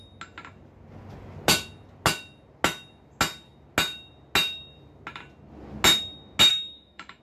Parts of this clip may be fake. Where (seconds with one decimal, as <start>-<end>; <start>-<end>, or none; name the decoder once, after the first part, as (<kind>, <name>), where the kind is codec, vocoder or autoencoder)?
6.5-7.2 (autoencoder, DAC-VAE)